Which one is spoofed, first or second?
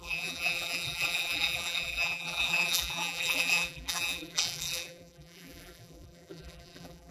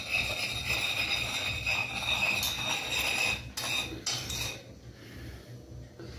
first